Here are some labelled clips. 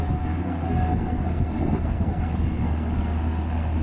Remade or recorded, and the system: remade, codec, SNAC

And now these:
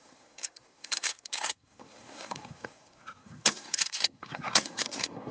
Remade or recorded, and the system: remade, codec, SNAC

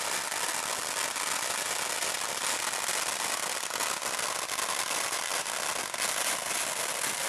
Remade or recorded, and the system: recorded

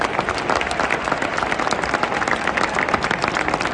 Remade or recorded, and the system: recorded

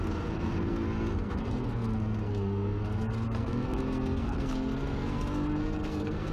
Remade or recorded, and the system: remade, codec, SNAC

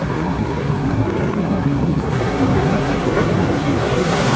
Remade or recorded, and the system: remade, codec, SNAC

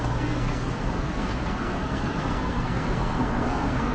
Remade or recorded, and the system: remade, codec, SNAC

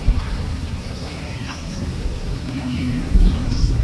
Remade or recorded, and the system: remade, codec, SNAC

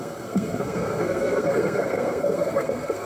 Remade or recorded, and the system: remade, codec, SNAC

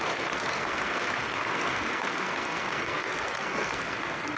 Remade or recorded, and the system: remade, codec, SNAC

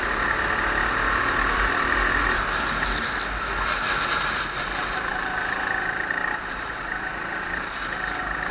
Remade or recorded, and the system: recorded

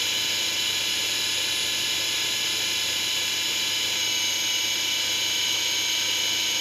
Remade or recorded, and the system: recorded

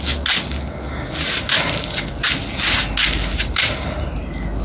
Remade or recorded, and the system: recorded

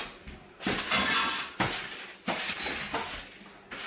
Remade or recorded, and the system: recorded